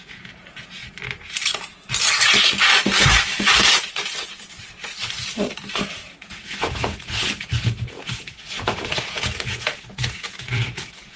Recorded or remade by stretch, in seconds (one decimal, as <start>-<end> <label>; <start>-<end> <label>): 0.0-0.8 remade; 0.8-6.0 recorded; 6.0-11.2 remade